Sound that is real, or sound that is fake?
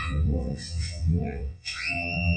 fake